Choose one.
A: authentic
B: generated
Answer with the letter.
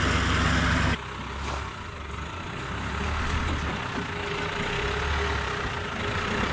A